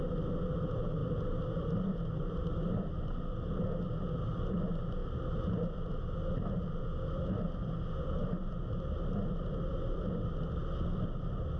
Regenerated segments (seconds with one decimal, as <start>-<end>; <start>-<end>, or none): 1.0-2.8